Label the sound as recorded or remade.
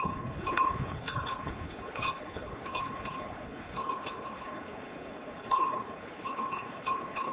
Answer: remade